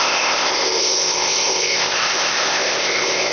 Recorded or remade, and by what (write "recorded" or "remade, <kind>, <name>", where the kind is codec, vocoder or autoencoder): remade, codec, ZipCodec